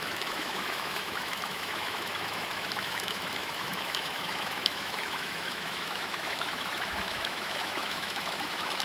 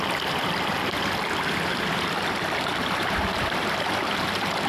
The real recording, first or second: second